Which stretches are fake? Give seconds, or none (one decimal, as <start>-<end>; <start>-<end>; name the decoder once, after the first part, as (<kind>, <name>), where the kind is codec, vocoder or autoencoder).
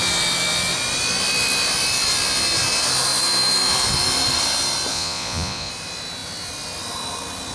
4.9-5.7 (vocoder, Vocos)